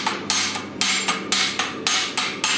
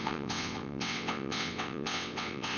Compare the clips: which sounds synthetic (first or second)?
second